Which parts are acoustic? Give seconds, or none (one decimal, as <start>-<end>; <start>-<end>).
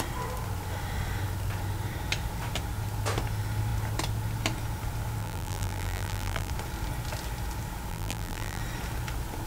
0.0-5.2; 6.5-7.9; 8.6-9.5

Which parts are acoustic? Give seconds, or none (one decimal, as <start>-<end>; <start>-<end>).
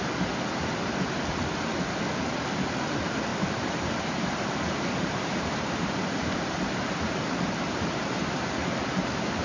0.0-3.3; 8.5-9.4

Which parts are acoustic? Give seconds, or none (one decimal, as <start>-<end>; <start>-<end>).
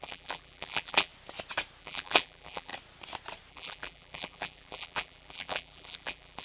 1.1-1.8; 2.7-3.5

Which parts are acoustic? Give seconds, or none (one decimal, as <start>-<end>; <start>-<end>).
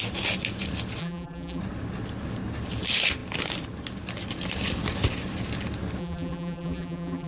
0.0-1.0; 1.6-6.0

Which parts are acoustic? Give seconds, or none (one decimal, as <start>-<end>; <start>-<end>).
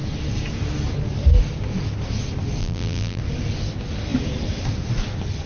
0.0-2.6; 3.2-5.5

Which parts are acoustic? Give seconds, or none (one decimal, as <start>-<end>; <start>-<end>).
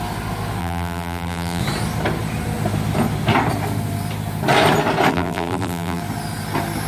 0.0-0.6; 1.6-5.1; 6.0-6.9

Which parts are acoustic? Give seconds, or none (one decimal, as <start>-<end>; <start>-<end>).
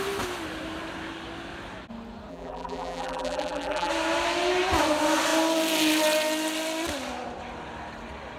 0.0-2.3; 3.9-8.4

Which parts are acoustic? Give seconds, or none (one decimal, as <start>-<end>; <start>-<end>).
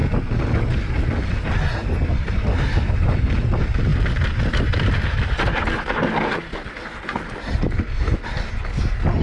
0.0-9.2